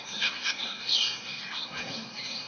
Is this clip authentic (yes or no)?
no